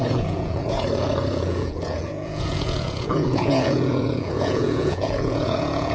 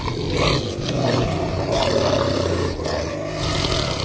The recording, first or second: second